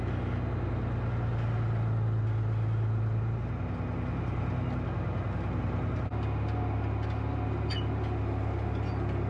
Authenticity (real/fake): real